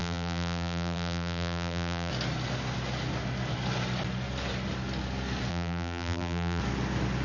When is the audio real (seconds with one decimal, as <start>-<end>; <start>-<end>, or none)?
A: 2.1-5.5; 6.6-7.2